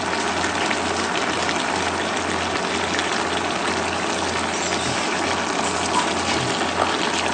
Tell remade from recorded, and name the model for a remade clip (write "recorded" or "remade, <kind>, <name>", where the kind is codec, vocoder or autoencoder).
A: recorded